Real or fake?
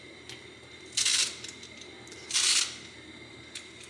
real